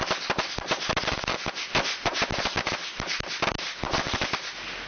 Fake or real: real